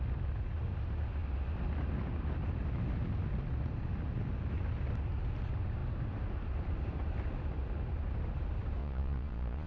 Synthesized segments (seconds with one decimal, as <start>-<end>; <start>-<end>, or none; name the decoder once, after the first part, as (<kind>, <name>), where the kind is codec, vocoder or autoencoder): 8.8-9.7 (vocoder, Vocos)